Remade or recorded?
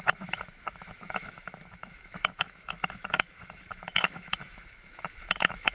remade